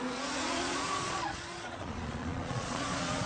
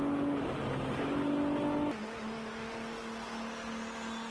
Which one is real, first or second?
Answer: second